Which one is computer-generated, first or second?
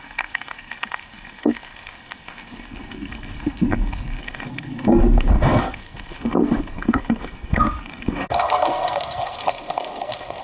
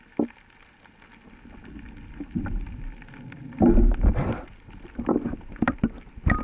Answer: first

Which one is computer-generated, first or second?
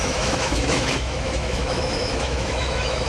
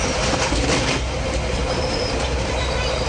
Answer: first